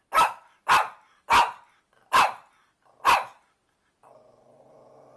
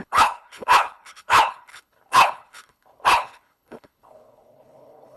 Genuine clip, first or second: first